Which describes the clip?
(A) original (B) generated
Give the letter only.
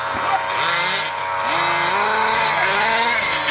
A